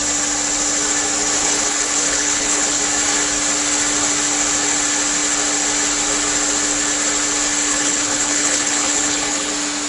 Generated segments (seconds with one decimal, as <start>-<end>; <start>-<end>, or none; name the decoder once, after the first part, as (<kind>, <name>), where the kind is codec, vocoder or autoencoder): 1.4-2.8 (codec, HILCodec); 7.7-9.5